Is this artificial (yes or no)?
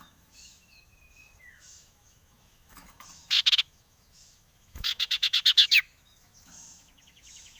yes